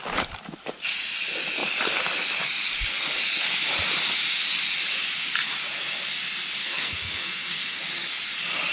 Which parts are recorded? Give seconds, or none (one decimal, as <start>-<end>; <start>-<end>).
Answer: 0.0-6.6; 7.8-8.7